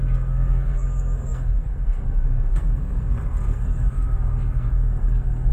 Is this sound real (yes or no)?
no